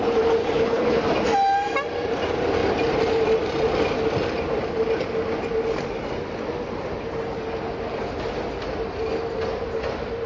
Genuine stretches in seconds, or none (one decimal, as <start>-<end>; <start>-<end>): 0.0-0.4; 1.0-10.3